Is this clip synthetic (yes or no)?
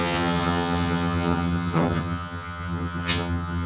yes